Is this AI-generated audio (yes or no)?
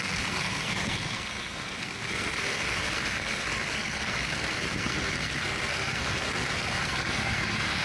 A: yes